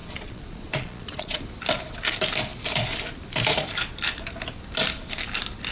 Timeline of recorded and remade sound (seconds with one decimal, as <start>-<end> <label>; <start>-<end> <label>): 0.0-1.4 remade; 1.4-5.7 recorded